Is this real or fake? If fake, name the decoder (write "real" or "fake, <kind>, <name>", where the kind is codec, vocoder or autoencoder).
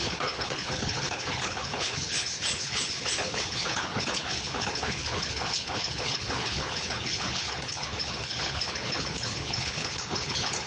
fake, codec, HILCodec